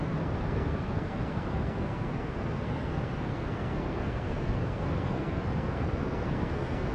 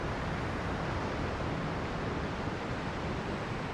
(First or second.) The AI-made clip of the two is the first